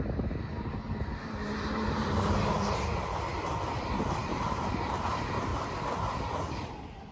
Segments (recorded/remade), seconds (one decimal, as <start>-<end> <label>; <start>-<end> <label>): 0.0-4.2 recorded; 4.2-4.7 remade; 4.7-7.1 recorded

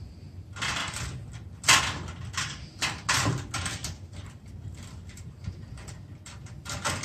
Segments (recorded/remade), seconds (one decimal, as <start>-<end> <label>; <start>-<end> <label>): 0.0-3.8 recorded; 3.8-5.7 remade; 5.7-7.0 recorded

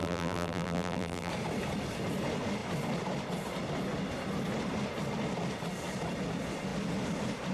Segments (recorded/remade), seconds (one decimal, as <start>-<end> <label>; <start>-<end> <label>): 0.0-1.3 remade; 1.3-7.5 recorded